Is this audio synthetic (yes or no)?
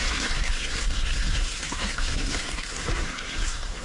yes